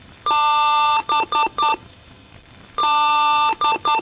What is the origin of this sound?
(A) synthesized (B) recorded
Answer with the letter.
A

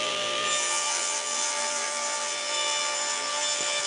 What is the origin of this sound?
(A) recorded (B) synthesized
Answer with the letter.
B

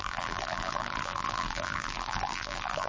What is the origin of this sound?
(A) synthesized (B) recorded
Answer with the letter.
A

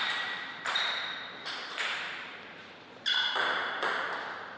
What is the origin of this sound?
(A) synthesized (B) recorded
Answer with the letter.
A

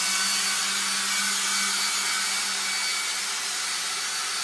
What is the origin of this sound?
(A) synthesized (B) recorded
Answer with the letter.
B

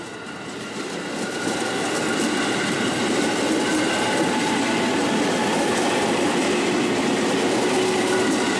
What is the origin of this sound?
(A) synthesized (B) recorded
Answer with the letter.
B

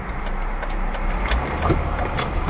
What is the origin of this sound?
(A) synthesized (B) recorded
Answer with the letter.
B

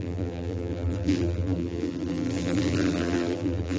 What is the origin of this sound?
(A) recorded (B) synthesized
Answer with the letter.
B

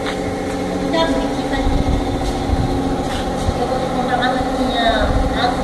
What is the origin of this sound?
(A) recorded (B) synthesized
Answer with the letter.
A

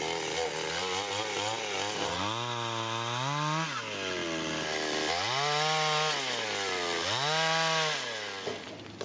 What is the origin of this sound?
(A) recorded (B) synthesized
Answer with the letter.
A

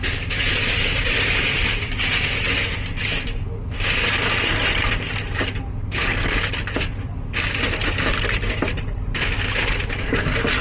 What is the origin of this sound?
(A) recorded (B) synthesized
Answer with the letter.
A